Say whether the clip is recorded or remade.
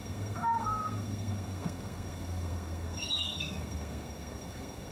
remade